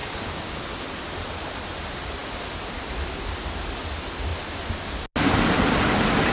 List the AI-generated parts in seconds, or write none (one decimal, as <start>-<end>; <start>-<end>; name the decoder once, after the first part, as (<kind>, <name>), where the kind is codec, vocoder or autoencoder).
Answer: 0.0-0.6 (codec, DAC)

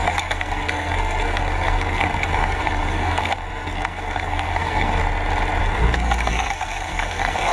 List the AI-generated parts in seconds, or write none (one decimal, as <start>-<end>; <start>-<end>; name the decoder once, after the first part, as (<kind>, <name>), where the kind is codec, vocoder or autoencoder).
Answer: 0.0-5.0 (codec, SNAC); 5.6-7.5

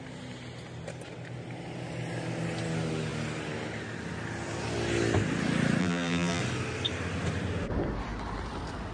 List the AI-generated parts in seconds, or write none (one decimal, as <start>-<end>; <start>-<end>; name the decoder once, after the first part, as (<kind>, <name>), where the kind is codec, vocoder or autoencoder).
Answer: 5.8-6.4 (vocoder, BigVGAN v2)

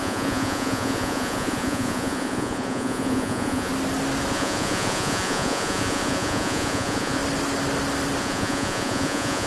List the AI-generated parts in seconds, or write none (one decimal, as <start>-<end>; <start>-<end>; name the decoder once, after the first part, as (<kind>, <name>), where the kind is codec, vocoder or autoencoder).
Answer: 0.0-3.7 (vocoder, Vocos); 4.3-7.2; 8.2-9.5